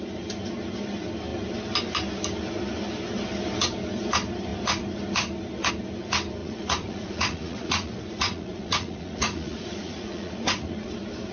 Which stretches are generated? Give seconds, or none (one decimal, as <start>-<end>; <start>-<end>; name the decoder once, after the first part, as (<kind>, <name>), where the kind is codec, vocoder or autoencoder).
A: 6.4-10.9 (vocoder, Vocos)